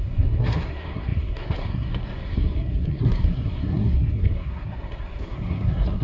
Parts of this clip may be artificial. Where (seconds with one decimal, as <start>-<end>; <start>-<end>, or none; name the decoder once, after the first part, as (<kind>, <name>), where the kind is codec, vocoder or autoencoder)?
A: 0.0-6.0 (codec, SNAC)